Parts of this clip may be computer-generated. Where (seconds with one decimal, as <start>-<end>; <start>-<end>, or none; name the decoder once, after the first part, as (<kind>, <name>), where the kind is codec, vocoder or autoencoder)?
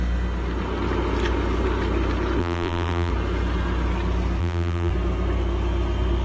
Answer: 2.4-3.1 (vocoder, BigVGAN v2); 4.4-4.9